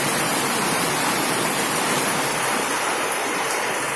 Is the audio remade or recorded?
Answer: remade